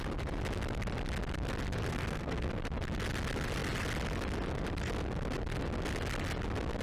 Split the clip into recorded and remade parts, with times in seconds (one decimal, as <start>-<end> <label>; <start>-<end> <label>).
0.0-1.9 recorded; 1.9-2.5 remade; 2.5-6.8 recorded